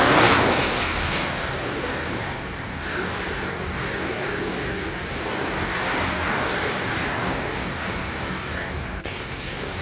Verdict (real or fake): fake